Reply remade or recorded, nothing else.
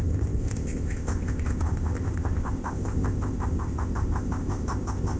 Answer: remade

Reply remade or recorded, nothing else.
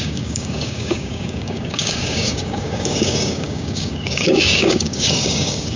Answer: remade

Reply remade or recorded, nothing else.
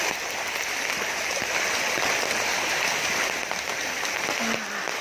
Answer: remade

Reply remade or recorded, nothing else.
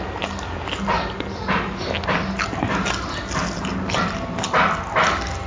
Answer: recorded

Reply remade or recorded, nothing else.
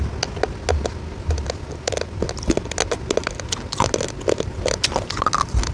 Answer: recorded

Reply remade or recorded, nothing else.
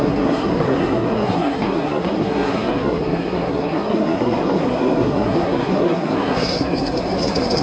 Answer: remade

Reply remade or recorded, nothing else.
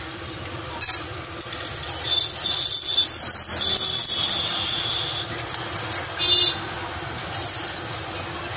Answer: recorded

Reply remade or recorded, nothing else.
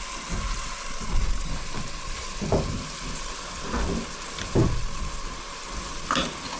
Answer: recorded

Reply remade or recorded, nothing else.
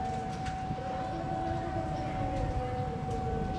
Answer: recorded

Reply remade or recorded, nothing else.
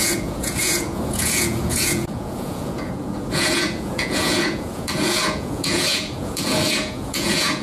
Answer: remade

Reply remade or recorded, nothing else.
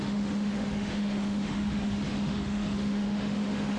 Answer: remade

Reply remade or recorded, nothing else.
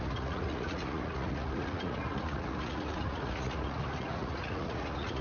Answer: remade